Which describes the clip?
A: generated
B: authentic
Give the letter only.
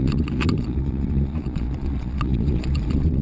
A